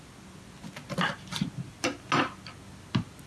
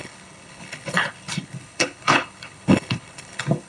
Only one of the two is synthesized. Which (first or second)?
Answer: second